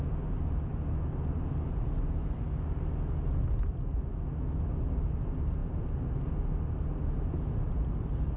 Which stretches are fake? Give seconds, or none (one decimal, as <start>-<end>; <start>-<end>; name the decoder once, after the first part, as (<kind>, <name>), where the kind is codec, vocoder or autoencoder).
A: none